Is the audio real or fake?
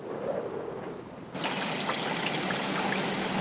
real